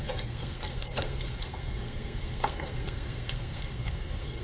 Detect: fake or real fake